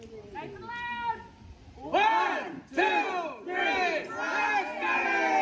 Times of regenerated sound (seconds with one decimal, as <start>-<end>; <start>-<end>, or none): none